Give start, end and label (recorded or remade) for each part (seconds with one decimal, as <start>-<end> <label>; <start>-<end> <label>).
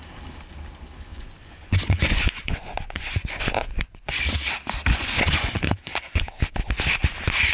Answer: 0.0-1.1 recorded; 1.1-4.2 remade; 4.2-4.9 recorded; 4.9-6.4 remade; 6.4-7.5 recorded